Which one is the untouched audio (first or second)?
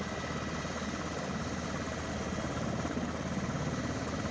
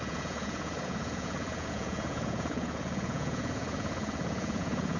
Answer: first